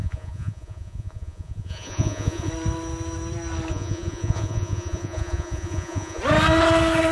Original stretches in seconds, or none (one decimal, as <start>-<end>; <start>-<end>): 2.5-3.7; 6.2-7.1